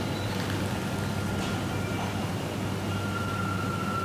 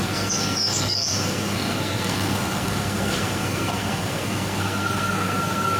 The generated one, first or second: second